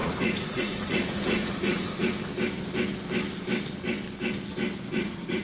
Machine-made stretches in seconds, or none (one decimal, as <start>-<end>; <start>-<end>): 0.0-2.3; 4.9-5.4